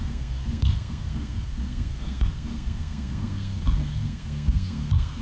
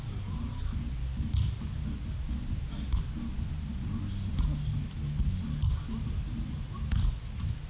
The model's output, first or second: first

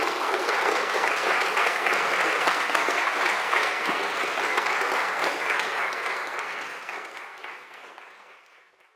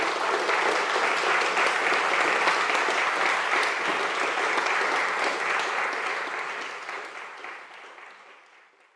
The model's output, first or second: first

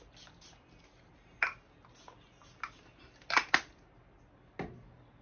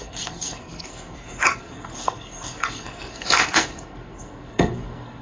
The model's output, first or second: second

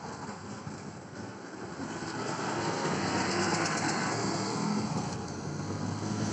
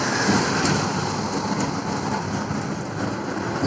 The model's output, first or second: first